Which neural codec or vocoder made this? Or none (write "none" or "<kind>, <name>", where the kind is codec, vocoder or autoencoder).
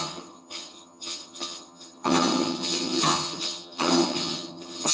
vocoder, HiFi-GAN